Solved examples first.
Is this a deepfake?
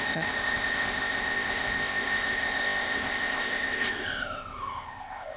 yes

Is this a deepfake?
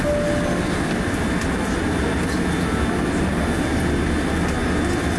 no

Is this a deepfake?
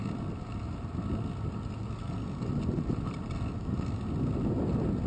no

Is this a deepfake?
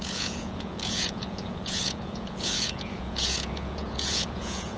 yes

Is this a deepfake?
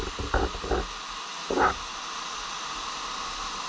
no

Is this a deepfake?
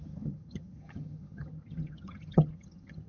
yes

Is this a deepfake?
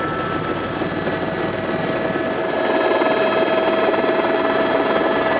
no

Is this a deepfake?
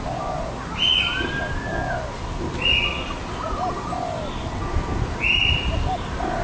no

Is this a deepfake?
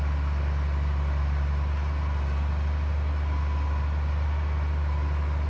no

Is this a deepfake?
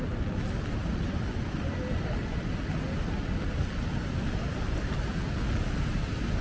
no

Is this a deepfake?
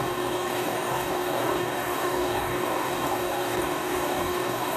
yes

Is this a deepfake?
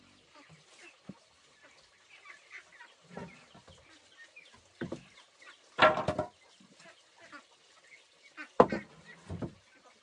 no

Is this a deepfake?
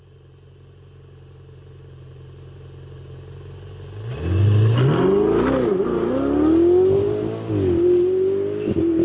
no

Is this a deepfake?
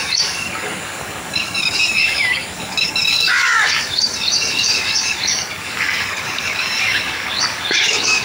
yes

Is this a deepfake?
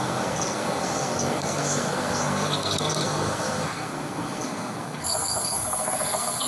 yes